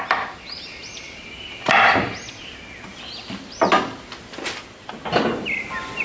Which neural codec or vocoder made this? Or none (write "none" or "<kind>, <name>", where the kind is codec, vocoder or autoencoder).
none